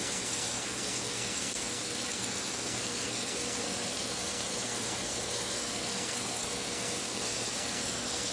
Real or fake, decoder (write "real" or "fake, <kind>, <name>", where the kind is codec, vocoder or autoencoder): fake, codec, SNAC